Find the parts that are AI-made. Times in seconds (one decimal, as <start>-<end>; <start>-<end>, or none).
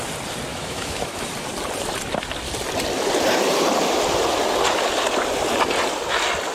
0.5-1.3